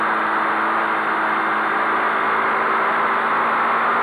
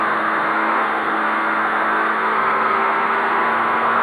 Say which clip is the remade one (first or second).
second